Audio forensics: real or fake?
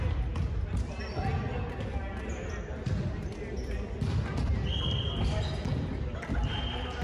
real